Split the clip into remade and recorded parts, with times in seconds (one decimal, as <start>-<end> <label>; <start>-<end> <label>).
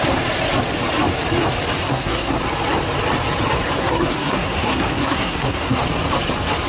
0.0-1.8 recorded; 1.8-2.4 remade; 2.4-3.8 recorded; 3.8-5.8 remade; 5.8-6.7 recorded